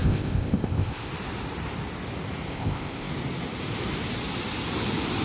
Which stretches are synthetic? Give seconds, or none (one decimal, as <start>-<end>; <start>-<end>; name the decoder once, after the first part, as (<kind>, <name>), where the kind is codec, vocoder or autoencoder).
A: 0.0-1.1 (codec, ZipCodec); 2.5-3.1